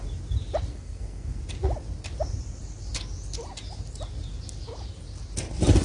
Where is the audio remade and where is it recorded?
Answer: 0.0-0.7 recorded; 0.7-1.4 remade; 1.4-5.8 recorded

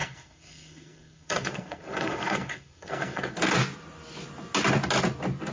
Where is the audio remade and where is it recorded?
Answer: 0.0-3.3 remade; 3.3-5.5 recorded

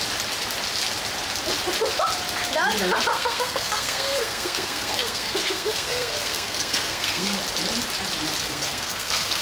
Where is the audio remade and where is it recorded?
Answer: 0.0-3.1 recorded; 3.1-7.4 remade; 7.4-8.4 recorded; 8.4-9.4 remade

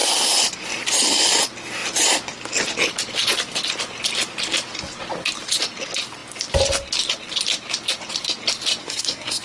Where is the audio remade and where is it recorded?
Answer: 0.0-8.8 recorded; 8.8-9.4 remade

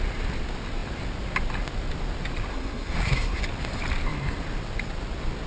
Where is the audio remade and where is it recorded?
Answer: 0.0-2.5 recorded; 2.5-3.4 remade; 3.4-5.5 recorded